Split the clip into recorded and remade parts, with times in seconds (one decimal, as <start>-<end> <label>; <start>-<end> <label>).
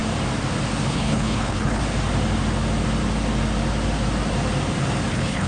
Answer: 0.0-0.9 recorded; 0.9-1.8 remade; 1.8-5.1 recorded; 5.1-5.5 remade